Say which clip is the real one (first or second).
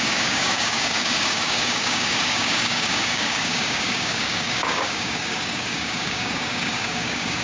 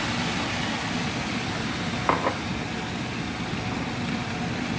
second